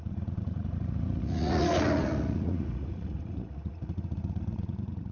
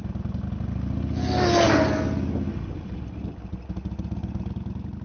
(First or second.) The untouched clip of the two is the second